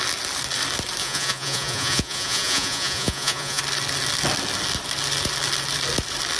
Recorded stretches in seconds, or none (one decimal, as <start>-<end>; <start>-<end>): 0.0-1.0; 3.6-6.4